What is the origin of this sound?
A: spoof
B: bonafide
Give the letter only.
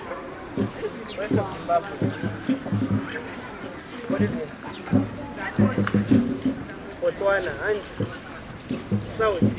B